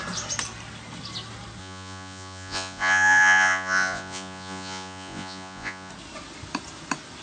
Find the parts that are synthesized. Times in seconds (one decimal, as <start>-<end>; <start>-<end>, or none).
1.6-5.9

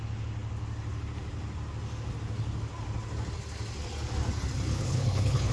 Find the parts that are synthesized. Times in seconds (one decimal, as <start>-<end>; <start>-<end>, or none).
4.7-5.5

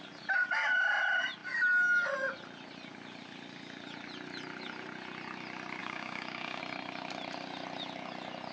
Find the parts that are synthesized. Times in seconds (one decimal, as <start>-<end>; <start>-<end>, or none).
5.8-6.6

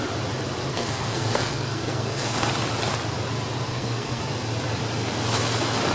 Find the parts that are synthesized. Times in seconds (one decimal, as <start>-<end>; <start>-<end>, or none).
0.7-2.5; 3.7-4.2

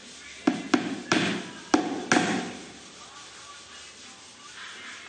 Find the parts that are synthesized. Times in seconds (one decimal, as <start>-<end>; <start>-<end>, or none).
none

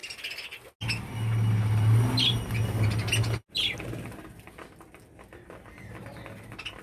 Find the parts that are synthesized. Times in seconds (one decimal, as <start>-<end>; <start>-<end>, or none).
none

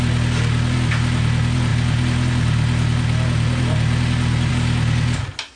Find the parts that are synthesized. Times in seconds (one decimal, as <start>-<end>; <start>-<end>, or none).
none